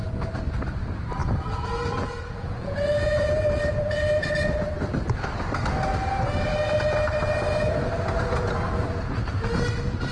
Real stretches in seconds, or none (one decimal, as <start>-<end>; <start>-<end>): 0.0-1.2; 3.4-10.1